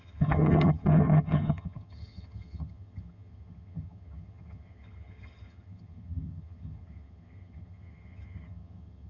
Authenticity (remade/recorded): remade